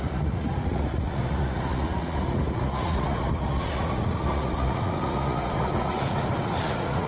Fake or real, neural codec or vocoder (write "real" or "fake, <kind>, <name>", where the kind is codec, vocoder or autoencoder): fake, vocoder, Vocos